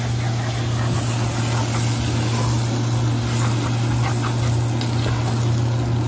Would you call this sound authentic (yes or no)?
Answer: yes